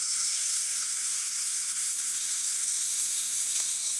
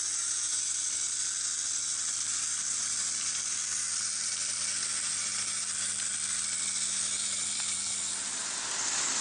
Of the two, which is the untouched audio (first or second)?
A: second